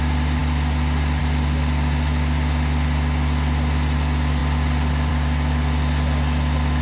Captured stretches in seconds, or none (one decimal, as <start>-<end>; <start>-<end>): 0.0-6.8